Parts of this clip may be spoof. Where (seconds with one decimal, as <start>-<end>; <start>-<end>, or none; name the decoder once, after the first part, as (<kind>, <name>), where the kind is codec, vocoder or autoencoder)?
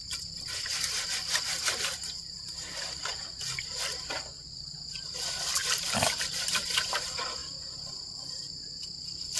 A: 0.0-7.4 (vocoder, BigVGAN v2); 8.1-9.4